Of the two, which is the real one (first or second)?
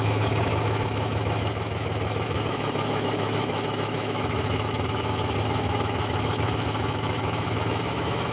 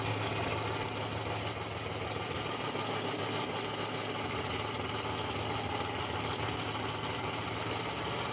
second